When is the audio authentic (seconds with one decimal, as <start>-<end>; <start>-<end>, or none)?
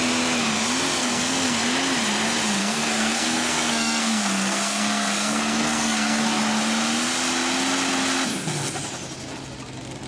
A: 0.0-1.0; 1.6-2.6; 6.4-10.1